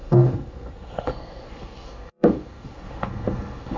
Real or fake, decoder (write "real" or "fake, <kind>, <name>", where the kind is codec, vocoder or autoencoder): fake, codec, SNAC